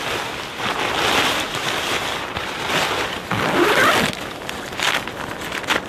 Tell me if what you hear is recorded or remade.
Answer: recorded